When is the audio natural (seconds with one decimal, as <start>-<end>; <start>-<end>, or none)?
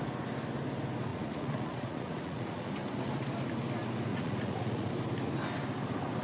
0.0-1.1; 2.7-4.1; 4.9-6.2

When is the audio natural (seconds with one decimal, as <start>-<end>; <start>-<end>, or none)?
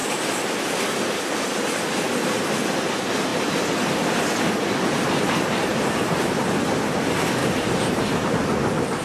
0.7-5.7; 6.3-7.4; 8.3-9.0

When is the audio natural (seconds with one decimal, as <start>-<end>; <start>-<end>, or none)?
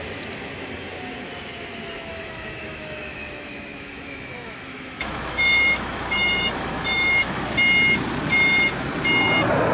0.0-2.1; 7.4-9.7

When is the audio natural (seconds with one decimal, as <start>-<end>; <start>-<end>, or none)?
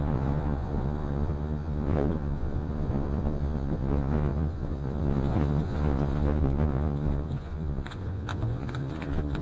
none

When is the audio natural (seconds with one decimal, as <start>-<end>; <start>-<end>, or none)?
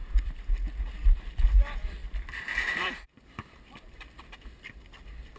0.8-2.0; 4.3-5.4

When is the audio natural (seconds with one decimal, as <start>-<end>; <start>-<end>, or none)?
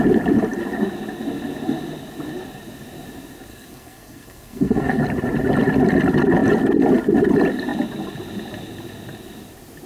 0.0-3.5; 5.0-9.9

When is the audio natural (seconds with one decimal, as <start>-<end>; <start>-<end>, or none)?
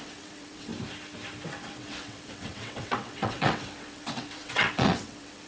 0.7-1.5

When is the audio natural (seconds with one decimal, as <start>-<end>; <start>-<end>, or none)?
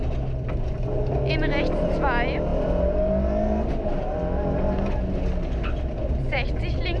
0.0-2.5; 3.1-7.0